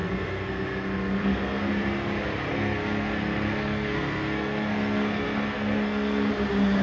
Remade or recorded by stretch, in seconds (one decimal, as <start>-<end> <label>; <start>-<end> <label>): 0.0-1.7 remade; 1.7-2.5 recorded; 2.5-6.3 remade; 6.3-6.8 recorded